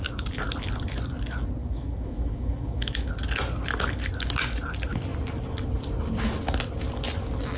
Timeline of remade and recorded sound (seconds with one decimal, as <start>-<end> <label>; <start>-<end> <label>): 0.0-1.6 recorded; 1.6-3.1 remade; 3.1-7.6 recorded